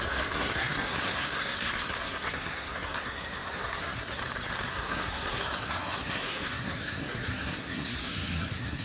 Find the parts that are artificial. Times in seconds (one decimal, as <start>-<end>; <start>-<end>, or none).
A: 0.0-4.2; 4.7-8.8